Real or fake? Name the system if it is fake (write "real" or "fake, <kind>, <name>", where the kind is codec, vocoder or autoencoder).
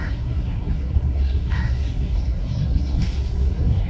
fake, codec, SNAC